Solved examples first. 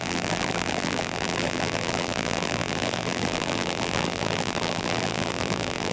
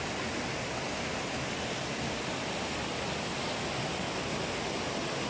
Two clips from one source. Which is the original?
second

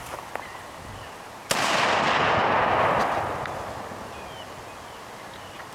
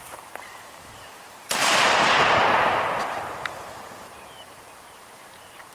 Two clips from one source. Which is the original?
first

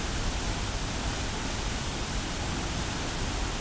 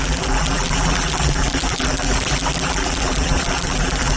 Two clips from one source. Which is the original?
first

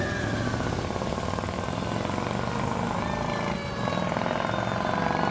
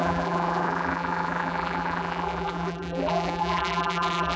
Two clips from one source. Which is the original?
first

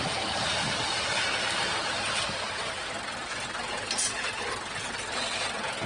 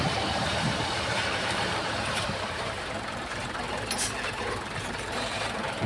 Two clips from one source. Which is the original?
first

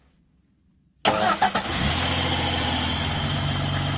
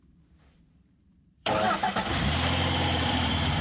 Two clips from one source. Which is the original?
first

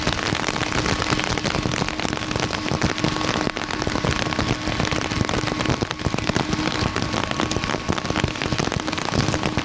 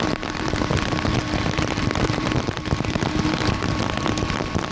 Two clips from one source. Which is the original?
first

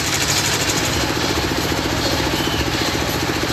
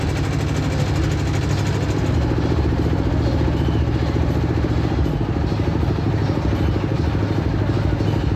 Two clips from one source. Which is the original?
second